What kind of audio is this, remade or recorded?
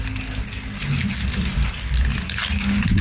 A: remade